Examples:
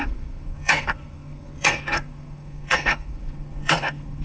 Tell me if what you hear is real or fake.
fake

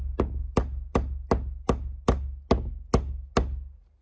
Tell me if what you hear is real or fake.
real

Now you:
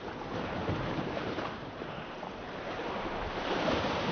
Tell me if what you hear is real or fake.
fake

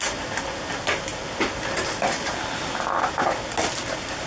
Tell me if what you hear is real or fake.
real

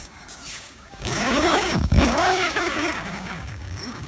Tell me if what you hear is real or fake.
fake